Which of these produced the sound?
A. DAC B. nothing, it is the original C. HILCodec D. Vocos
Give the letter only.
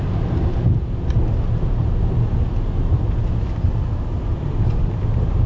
B